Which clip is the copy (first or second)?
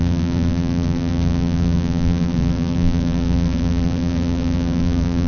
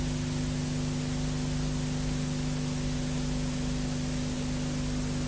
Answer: first